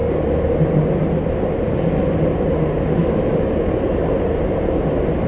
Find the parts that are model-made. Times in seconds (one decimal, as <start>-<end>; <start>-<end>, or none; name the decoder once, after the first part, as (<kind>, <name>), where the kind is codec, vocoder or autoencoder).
none